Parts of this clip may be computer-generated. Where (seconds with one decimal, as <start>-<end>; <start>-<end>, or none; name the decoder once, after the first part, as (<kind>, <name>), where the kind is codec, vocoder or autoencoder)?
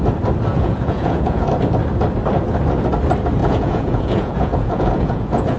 0.5-1.5 (vocoder, Vocos); 3.4-5.6